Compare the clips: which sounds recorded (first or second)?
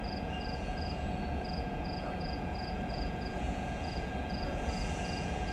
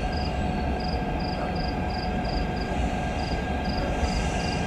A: second